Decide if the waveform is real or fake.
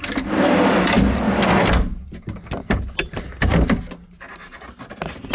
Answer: real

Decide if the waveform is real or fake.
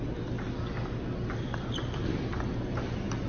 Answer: real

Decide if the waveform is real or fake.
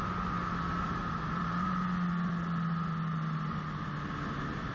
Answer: real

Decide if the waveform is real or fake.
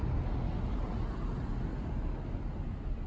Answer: real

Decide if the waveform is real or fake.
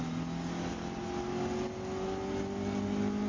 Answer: real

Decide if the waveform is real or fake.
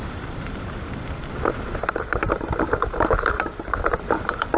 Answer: fake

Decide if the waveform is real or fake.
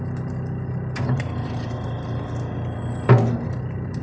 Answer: real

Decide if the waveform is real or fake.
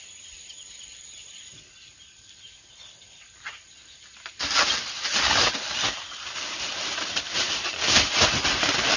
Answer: fake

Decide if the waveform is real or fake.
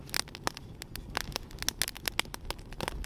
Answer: real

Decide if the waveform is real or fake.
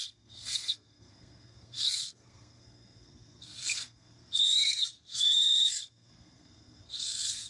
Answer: fake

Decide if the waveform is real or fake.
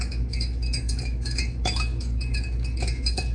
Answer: fake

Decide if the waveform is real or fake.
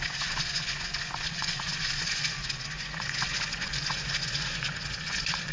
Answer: fake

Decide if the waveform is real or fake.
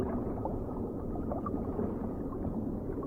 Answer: fake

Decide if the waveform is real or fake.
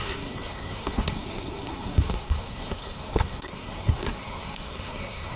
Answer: fake